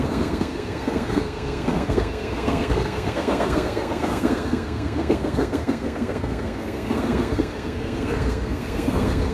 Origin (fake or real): fake